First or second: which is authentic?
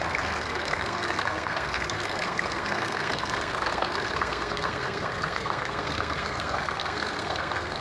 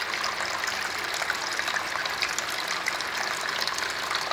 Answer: second